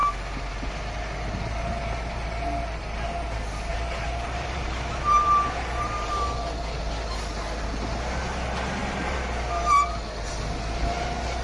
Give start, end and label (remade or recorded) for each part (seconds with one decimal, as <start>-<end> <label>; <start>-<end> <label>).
0.0-3.7 recorded; 3.7-6.4 remade; 6.4-8.8 recorded; 8.8-9.9 remade; 9.9-11.4 recorded